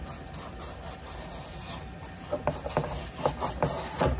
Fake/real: real